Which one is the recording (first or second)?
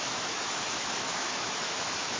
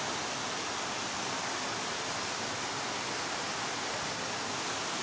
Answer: second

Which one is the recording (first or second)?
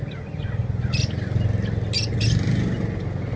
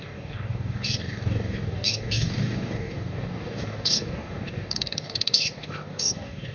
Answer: first